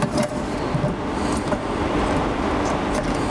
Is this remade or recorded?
recorded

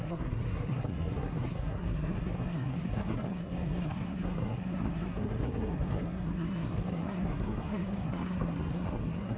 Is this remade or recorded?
remade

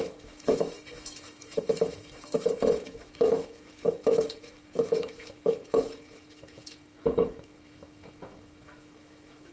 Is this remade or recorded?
remade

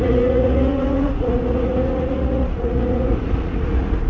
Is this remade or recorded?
remade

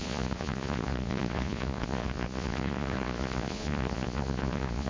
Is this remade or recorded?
remade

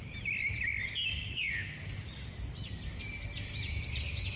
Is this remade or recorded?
recorded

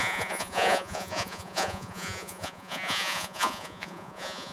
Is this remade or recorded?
remade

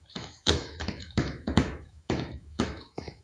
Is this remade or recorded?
remade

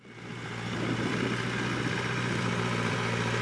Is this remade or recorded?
remade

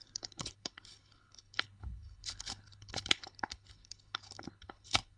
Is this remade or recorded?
remade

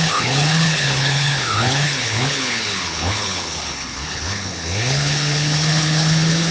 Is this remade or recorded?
remade